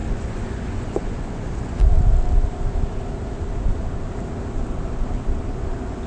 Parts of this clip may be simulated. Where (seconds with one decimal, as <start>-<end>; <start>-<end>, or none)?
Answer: 0.0-1.8; 5.5-6.1